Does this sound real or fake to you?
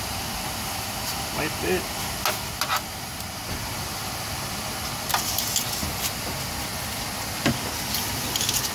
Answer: real